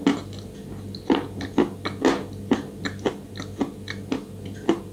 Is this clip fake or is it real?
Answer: real